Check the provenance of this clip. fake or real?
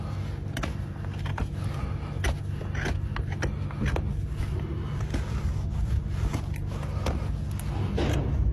real